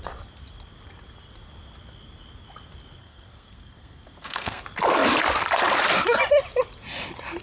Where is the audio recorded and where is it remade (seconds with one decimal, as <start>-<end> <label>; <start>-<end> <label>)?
0.0-3.0 recorded; 3.0-4.6 remade; 4.6-7.4 recorded